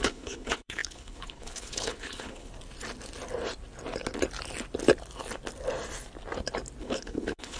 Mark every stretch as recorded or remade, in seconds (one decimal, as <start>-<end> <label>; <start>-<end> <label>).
0.0-2.5 remade; 2.5-6.8 recorded; 6.8-7.6 remade

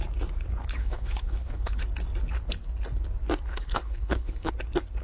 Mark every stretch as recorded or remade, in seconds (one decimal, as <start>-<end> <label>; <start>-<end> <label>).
0.0-0.8 recorded; 0.8-1.8 remade; 1.8-3.5 recorded; 3.5-4.5 remade; 4.5-5.0 recorded

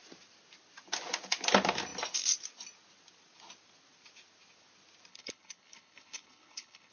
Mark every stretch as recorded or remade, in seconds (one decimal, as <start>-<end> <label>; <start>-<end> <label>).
0.0-5.1 recorded; 5.1-6.9 remade

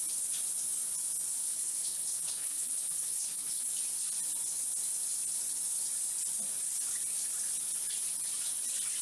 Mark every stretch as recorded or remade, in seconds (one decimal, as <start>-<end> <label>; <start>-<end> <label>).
0.0-1.5 recorded; 1.5-3.7 remade; 3.7-9.0 recorded

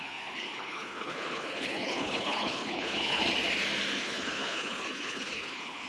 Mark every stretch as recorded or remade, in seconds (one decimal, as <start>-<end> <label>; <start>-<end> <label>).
0.0-3.2 remade; 3.2-4.0 recorded; 4.0-5.9 remade

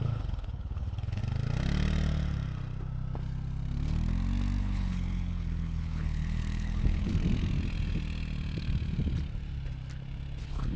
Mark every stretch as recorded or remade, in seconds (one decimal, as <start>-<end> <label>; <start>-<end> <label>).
0.0-1.2 remade; 1.2-4.6 recorded; 4.6-7.1 remade; 7.1-10.4 recorded; 10.4-10.8 remade

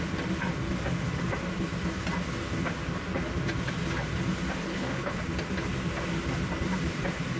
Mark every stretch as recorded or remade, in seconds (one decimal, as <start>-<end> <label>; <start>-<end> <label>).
0.0-4.7 recorded; 4.7-5.2 remade; 5.2-7.4 recorded